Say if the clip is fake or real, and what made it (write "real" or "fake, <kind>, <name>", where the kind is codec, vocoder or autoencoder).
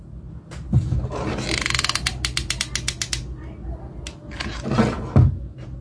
real